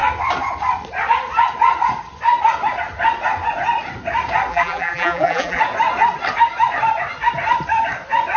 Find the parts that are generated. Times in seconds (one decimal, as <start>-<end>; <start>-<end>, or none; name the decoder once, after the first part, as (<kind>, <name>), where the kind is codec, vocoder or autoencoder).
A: 4.5-5.6 (vocoder, BigVGAN v2)